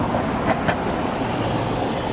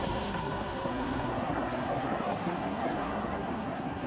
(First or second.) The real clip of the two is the first